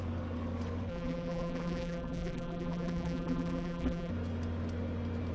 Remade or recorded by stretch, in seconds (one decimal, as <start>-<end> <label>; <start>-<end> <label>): 0.0-0.9 recorded; 0.9-4.1 remade; 4.1-5.3 recorded